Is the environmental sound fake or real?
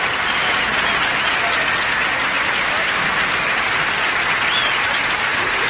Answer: real